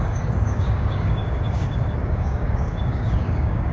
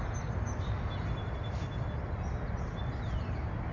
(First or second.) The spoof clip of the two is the first